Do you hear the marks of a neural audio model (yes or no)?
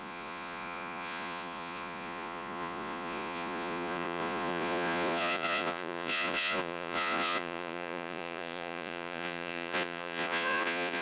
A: yes